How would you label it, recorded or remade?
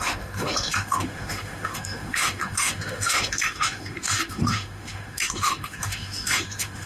remade